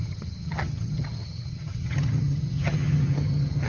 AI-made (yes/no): yes